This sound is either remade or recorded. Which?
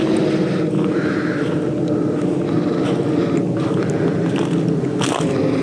recorded